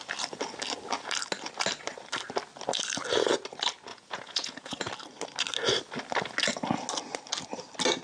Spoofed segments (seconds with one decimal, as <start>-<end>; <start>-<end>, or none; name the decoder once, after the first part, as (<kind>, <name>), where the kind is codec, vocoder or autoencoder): 3.9-4.9 (vocoder, Vocos)